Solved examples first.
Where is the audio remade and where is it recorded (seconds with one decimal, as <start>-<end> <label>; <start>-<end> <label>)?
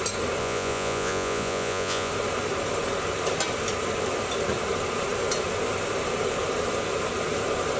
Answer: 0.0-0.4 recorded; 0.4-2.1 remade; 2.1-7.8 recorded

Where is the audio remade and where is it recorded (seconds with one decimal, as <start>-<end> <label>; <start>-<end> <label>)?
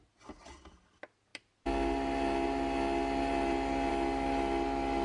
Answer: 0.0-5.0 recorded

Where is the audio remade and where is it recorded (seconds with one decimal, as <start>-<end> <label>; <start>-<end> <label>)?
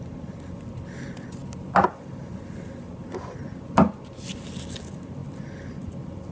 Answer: 0.0-6.3 recorded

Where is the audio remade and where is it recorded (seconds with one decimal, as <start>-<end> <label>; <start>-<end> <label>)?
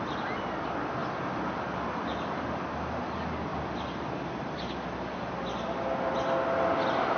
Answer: 0.0-7.2 recorded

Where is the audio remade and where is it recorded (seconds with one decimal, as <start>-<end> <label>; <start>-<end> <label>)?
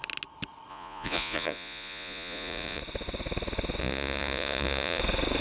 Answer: 0.0-0.7 recorded; 0.7-2.8 remade; 2.8-3.8 recorded; 3.8-5.0 remade; 5.0-5.4 recorded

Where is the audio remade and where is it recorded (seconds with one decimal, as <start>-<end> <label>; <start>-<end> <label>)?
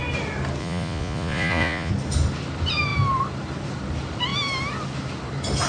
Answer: 0.0-0.6 recorded; 0.6-1.9 remade; 1.9-5.7 recorded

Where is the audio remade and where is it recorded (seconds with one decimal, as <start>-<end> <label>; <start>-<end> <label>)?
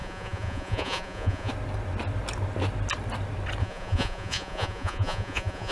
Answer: 0.0-1.5 remade; 1.5-3.6 recorded; 3.6-5.7 remade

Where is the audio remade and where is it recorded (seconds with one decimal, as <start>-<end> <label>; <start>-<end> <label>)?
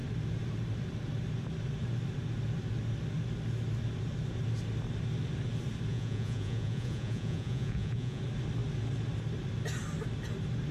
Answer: 0.0-5.9 recorded; 5.9-8.2 remade; 8.2-10.7 recorded